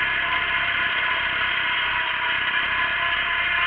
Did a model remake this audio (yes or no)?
no